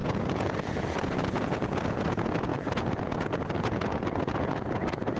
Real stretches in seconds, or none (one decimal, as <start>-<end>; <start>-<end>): none